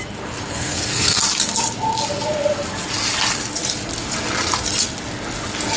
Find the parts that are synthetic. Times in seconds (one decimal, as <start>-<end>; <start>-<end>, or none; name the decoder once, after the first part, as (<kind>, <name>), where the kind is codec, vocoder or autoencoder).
0.5-1.2 (codec, SNAC)